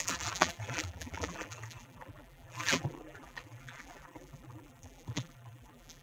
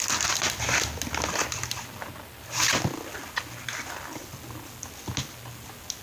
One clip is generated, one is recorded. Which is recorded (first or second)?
second